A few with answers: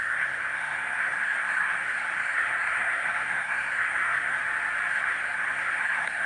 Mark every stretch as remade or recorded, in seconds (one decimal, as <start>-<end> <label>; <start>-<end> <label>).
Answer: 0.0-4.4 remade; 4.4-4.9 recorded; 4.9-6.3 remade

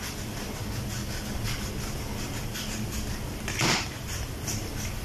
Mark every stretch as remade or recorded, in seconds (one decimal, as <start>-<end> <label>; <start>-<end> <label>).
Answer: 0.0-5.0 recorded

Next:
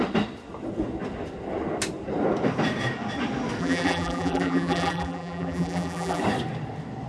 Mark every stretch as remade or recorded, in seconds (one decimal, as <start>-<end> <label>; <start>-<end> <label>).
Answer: 0.0-3.6 recorded; 3.6-6.2 remade; 6.2-7.1 recorded